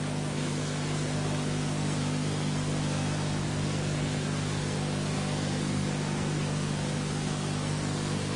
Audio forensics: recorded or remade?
remade